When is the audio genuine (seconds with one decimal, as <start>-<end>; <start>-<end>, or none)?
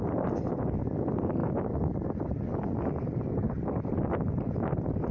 0.0-5.1